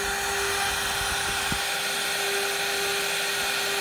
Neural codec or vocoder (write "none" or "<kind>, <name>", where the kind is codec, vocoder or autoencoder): none